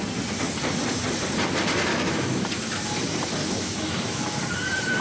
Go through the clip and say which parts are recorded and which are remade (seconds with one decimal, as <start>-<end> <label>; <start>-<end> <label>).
0.0-1.9 recorded; 1.9-2.4 remade; 2.4-3.4 recorded; 3.4-4.4 remade; 4.4-5.0 recorded